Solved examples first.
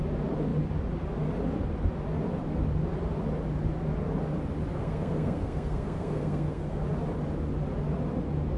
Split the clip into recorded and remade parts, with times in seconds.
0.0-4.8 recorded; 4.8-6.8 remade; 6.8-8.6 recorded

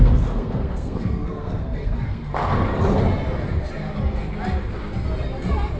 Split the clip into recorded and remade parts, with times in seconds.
0.0-2.3 remade; 2.3-5.8 recorded

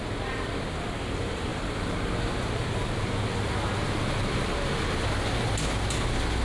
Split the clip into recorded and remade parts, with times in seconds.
0.0-6.4 recorded

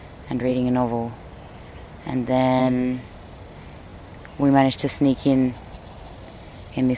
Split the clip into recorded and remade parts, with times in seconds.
0.0-2.6 recorded; 2.6-3.1 remade; 3.1-7.0 recorded

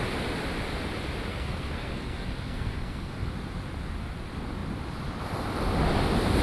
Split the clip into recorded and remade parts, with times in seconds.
0.0-1.3 recorded; 1.3-3.3 remade; 3.3-6.4 recorded

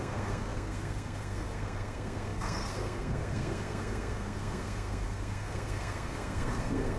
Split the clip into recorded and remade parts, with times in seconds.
0.0-7.0 remade